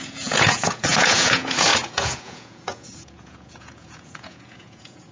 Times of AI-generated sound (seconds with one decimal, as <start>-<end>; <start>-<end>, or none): 0.0-5.1